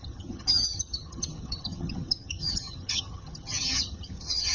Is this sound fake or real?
fake